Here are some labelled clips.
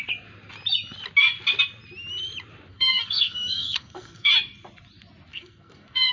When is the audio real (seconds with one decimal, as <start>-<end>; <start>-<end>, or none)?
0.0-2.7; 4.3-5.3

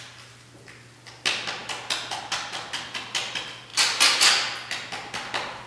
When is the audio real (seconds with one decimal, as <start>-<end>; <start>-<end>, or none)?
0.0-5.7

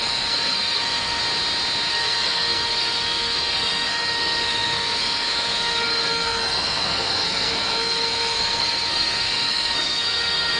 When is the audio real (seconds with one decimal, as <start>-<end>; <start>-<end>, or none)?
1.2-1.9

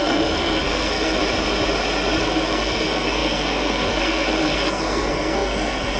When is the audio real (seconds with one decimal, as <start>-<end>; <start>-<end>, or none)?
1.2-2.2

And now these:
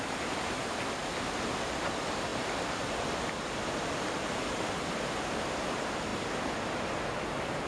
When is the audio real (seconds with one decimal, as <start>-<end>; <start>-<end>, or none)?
0.0-7.7

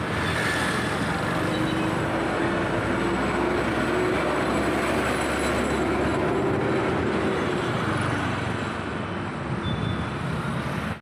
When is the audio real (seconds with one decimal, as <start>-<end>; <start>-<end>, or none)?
0.0-11.0